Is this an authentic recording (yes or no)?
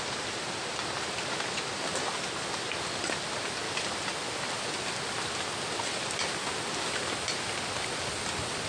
yes